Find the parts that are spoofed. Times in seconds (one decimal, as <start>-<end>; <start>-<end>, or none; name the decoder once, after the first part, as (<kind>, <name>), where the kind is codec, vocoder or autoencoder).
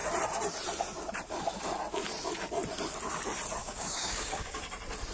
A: 3.6-4.6 (codec, DAC)